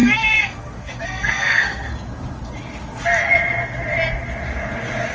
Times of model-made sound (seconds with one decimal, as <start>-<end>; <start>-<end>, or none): 0.0-1.9